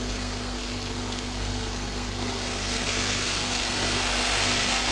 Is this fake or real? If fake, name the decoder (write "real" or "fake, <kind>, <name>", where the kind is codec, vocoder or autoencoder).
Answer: fake, codec, SNAC